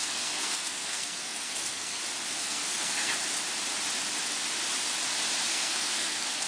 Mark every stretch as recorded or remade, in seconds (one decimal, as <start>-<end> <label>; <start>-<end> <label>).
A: 0.0-2.0 remade; 2.0-2.4 recorded; 2.4-3.1 remade; 3.1-5.5 recorded; 5.5-6.5 remade